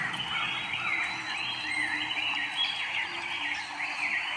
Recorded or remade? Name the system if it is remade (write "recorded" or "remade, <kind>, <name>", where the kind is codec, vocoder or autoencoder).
recorded